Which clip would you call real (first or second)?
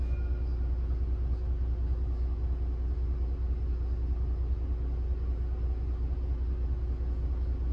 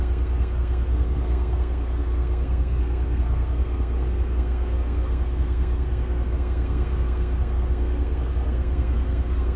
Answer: first